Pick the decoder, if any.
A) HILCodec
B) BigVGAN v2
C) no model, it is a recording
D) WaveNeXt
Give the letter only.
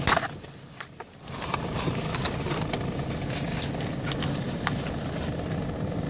C